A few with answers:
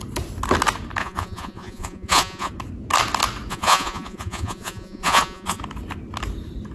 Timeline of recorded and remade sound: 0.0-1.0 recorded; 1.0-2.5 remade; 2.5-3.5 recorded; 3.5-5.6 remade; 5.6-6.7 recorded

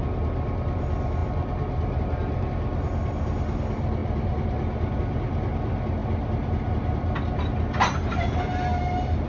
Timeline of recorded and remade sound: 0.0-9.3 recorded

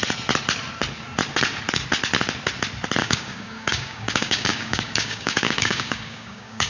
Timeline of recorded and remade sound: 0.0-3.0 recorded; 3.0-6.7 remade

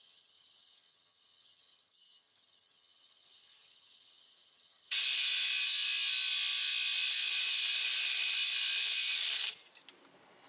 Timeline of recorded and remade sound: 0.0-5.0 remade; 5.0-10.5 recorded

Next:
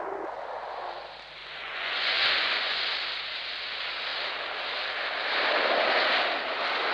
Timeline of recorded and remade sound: 0.0-1.4 recorded; 1.4-2.8 remade; 2.8-6.9 recorded

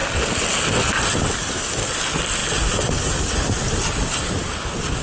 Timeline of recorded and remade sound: 0.0-1.2 recorded; 1.2-2.4 remade; 2.4-3.3 recorded; 3.3-5.0 remade

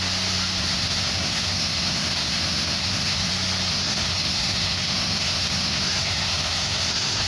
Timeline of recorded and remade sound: 0.0-0.6 recorded; 0.6-3.3 remade; 3.3-3.7 recorded; 3.7-7.3 remade